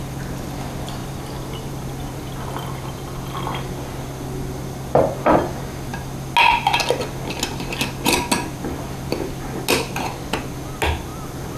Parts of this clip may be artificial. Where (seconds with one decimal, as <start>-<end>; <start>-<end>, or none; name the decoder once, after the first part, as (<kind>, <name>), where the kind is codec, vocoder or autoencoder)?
11.1-11.6 (vocoder, BigVGAN v2)